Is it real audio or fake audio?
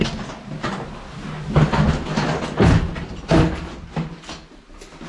real